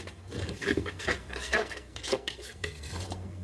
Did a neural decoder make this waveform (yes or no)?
yes